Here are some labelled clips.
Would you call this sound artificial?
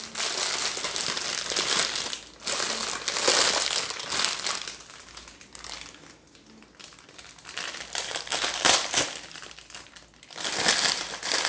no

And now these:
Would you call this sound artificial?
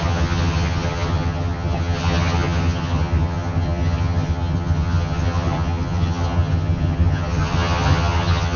yes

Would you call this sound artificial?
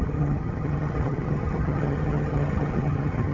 yes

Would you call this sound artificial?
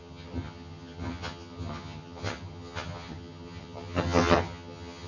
yes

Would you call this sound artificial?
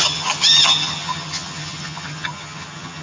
yes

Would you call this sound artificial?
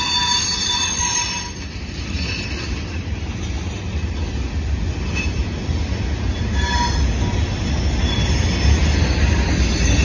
no